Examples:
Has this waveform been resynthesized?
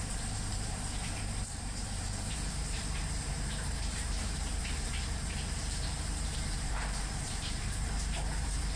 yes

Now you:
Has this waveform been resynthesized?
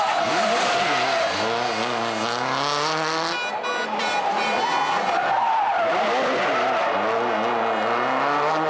no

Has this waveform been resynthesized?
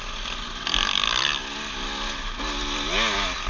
no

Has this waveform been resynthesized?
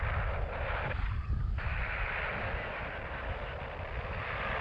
yes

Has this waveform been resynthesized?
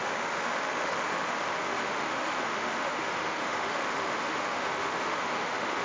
yes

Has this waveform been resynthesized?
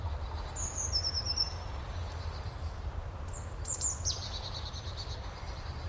yes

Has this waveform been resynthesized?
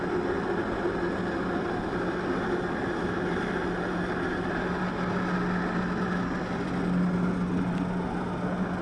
no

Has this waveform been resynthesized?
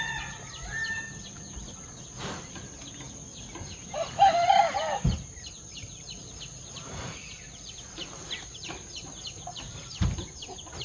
no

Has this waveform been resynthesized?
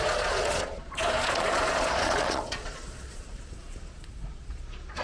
yes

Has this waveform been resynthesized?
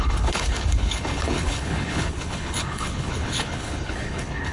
yes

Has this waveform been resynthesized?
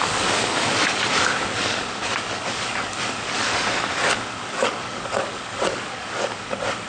yes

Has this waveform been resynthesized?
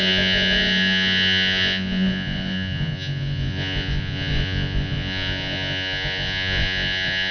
yes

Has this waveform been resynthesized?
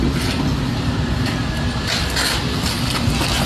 no